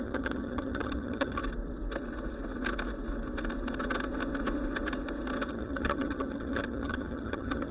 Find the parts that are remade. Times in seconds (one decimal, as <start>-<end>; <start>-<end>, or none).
0.0-1.4; 5.5-7.7